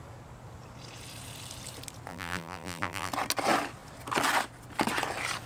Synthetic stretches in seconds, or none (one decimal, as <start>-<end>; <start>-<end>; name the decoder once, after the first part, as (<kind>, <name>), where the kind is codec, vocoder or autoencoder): 2.1-3.1 (vocoder, BigVGAN v2)